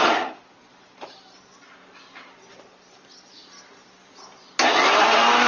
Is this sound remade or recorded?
recorded